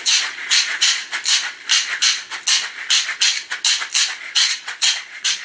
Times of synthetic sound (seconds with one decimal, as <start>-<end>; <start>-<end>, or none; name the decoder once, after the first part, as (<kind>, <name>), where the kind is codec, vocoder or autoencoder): 0.0-1.0 (vocoder, Vocos); 4.2-5.4